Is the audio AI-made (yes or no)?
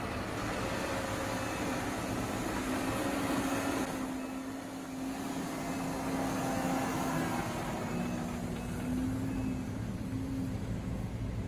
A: no